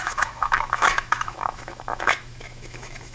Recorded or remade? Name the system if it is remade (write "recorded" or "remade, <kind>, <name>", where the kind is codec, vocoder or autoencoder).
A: remade, autoencoder, DAC-VAE